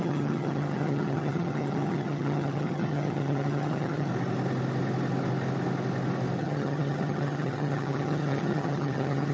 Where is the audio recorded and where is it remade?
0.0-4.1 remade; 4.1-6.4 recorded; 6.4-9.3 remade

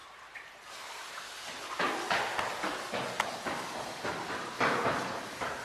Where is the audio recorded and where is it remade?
0.0-5.6 recorded

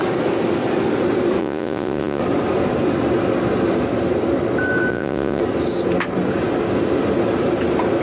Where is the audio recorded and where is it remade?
0.0-1.4 recorded; 1.4-2.2 remade; 2.2-4.9 recorded; 4.9-5.4 remade; 5.4-8.0 recorded

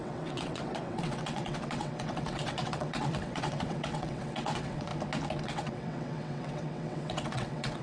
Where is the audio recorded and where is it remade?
0.0-4.9 remade; 4.9-5.4 recorded; 5.4-7.8 remade

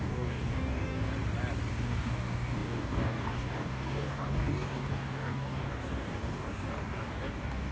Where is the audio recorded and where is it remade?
0.0-1.1 remade; 1.1-1.7 recorded; 1.7-7.7 remade